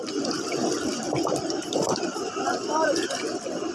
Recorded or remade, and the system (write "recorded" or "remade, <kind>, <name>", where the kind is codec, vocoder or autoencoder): remade, vocoder, BigVGAN v2